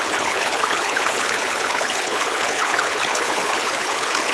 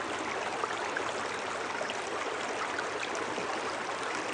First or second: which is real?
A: second